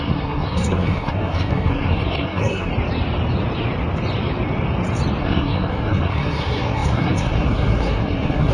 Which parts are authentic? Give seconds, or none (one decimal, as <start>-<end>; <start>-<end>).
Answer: 2.7-5.2